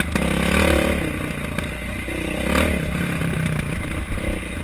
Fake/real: real